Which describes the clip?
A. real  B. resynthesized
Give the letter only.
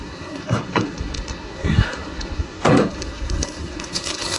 B